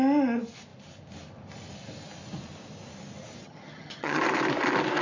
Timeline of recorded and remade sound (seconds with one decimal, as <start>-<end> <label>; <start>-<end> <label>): 0.0-3.4 recorded; 3.4-4.2 remade; 4.2-5.0 recorded